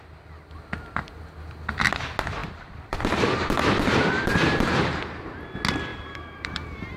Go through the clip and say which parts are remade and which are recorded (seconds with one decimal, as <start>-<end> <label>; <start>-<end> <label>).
0.0-2.4 recorded; 2.4-4.9 remade; 4.9-5.9 recorded; 5.9-7.0 remade